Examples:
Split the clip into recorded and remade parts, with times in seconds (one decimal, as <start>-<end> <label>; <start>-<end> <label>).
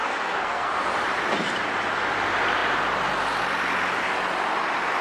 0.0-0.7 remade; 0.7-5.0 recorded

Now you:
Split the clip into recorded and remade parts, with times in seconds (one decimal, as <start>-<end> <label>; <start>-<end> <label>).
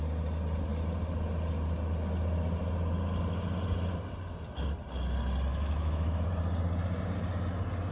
0.0-5.5 recorded; 5.5-6.3 remade; 6.3-7.9 recorded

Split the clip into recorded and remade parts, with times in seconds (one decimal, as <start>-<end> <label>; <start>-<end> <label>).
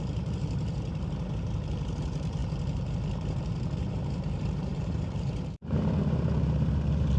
0.0-7.2 remade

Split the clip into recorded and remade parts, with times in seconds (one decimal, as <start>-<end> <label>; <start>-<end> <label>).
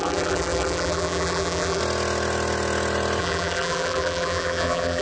0.0-1.8 remade; 1.8-3.2 recorded; 3.2-5.0 remade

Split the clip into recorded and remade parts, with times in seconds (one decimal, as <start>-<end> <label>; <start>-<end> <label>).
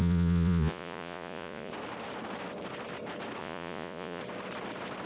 0.0-1.7 remade; 1.7-3.4 recorded; 3.4-4.2 remade; 4.2-5.1 recorded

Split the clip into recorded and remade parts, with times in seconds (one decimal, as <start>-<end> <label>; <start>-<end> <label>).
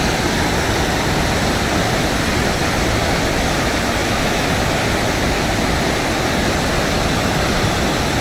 0.0-4.0 recorded; 4.0-4.5 remade; 4.5-8.2 recorded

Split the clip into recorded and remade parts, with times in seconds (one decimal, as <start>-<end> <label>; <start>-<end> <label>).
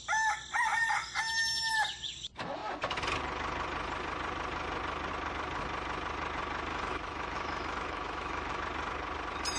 0.0-6.7 recorded; 6.7-8.6 remade; 8.6-9.6 recorded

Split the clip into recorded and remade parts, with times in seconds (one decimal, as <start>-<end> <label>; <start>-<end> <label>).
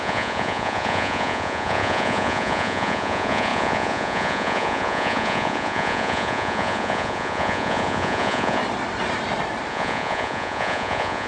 0.0-8.6 remade; 8.6-9.7 recorded; 9.7-11.3 remade